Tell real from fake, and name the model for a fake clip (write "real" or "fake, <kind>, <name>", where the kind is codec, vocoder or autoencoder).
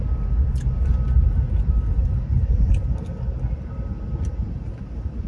real